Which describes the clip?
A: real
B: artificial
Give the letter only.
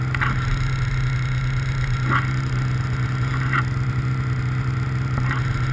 A